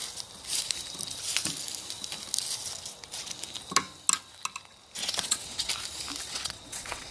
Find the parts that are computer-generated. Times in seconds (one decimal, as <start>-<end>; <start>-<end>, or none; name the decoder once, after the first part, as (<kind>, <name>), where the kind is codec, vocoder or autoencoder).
5.0-5.7 (vocoder, WaveNeXt); 6.2-7.1